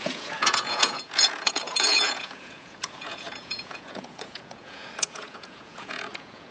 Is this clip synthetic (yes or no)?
yes